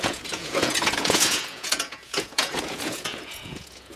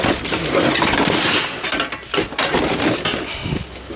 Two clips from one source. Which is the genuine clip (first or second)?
second